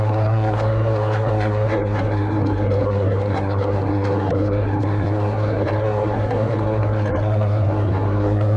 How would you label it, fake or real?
fake